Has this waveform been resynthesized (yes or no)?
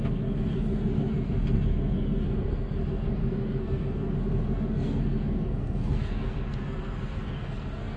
yes